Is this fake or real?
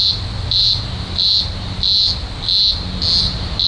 real